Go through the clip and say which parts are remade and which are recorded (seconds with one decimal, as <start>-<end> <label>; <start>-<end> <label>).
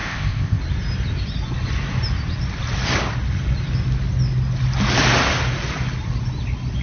0.0-0.6 remade; 0.6-6.8 recorded